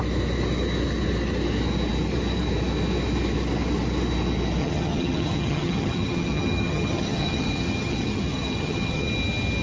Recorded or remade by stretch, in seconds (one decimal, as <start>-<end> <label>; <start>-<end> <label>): 0.0-4.6 recorded; 4.6-9.1 remade; 9.1-9.6 recorded